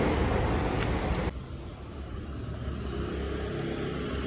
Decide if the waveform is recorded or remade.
recorded